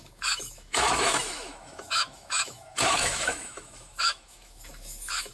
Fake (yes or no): yes